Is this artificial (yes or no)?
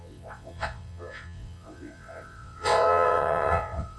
yes